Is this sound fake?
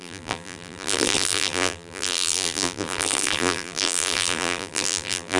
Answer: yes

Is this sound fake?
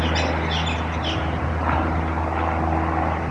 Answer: no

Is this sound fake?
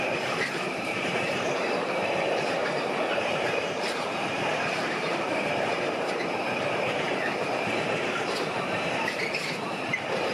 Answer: yes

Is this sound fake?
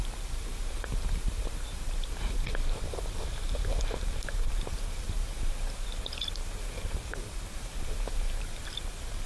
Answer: yes